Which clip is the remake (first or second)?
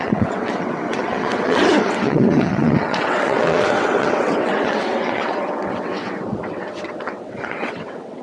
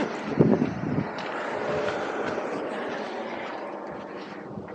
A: first